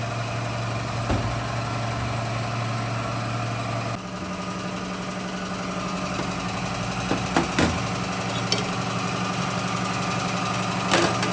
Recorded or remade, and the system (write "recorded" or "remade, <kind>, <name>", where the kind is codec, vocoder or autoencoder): recorded